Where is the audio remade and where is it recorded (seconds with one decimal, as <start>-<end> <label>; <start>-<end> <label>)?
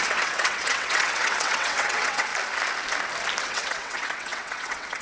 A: 0.0-2.3 remade; 2.3-3.4 recorded; 3.4-5.0 remade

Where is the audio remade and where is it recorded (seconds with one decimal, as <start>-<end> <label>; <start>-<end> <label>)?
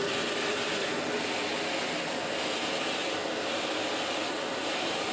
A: 0.0-5.1 recorded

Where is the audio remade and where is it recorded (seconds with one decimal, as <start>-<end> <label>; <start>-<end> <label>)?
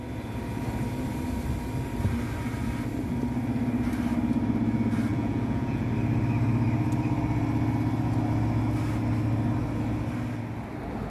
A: 0.0-5.1 recorded; 5.1-5.9 remade; 5.9-11.1 recorded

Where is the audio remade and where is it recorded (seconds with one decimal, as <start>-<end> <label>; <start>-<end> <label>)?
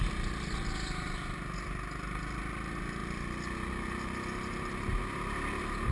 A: 0.0-5.9 recorded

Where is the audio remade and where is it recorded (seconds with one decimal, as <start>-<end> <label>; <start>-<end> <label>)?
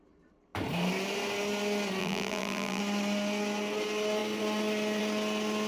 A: 0.0-2.0 recorded; 2.0-2.8 remade; 2.8-5.7 recorded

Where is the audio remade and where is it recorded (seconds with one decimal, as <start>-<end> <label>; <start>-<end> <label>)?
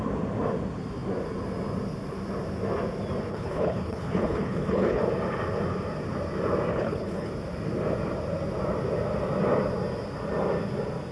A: 0.0-3.3 recorded; 3.3-5.0 remade; 5.0-6.7 recorded; 6.7-7.3 remade; 7.3-11.1 recorded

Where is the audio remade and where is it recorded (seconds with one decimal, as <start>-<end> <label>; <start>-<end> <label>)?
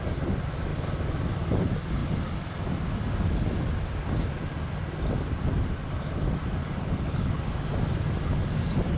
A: 0.0-6.6 recorded; 6.6-7.4 remade; 7.4-9.0 recorded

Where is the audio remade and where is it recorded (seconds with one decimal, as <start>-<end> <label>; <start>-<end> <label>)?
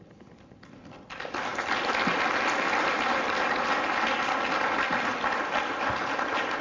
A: 0.0-6.6 recorded